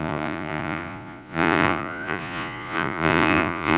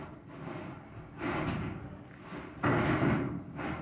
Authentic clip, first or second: second